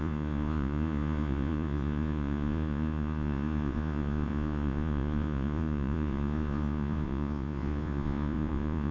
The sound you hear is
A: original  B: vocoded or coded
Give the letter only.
B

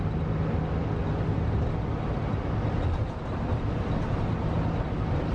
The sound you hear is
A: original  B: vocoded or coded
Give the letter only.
A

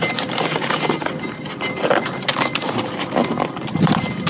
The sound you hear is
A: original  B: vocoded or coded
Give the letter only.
A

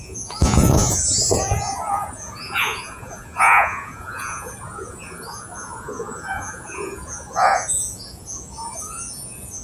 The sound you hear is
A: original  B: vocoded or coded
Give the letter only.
B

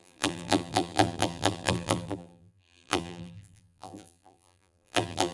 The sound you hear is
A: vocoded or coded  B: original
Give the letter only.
A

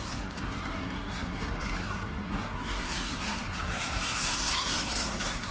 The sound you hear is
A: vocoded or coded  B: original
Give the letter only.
A